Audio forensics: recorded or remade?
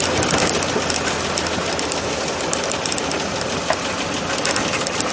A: recorded